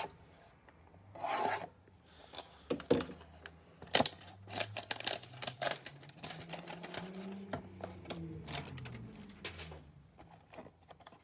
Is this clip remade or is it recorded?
recorded